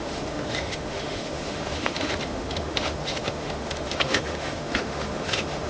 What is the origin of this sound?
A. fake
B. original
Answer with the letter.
A